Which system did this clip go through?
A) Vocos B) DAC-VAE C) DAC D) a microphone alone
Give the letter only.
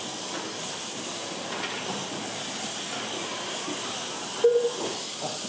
D